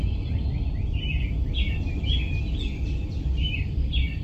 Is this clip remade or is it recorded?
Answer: recorded